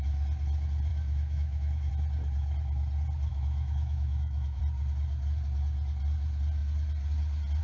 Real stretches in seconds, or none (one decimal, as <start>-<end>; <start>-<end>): 0.0-0.9; 1.9-3.3; 4.6-7.6